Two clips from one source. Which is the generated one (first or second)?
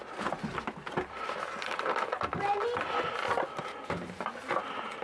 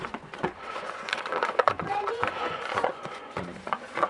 second